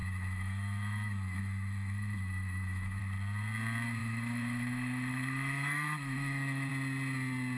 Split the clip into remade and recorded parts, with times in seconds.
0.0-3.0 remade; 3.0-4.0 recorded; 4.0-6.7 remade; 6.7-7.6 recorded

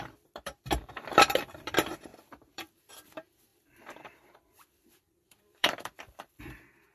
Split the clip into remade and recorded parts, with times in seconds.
0.0-6.9 remade